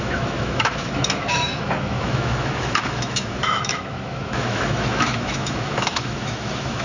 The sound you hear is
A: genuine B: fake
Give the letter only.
B